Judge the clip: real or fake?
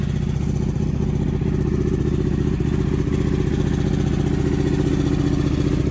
real